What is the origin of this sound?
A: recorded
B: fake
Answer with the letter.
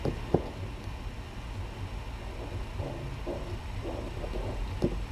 A